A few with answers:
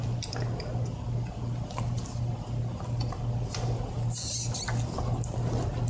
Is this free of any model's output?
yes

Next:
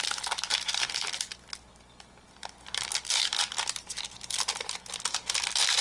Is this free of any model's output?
yes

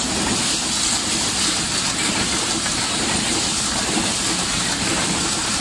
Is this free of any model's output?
yes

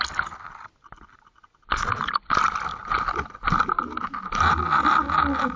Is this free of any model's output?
yes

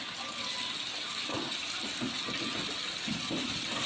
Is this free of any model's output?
yes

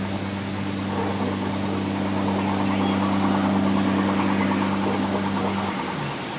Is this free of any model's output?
yes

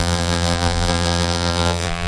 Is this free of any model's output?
no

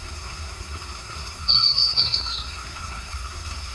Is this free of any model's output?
no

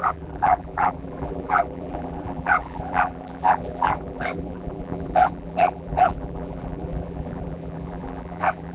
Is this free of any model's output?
no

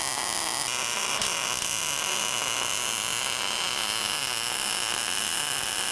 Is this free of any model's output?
yes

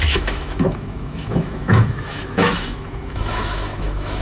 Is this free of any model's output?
no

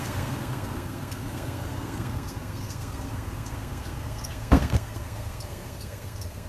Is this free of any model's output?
no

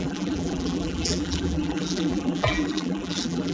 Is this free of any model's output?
no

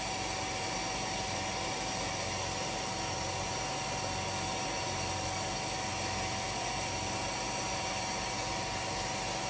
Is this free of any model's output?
yes